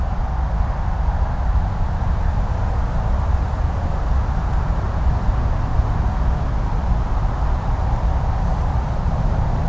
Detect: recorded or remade recorded